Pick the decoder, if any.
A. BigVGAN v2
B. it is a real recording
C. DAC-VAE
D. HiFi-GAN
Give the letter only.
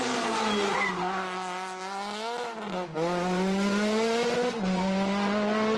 B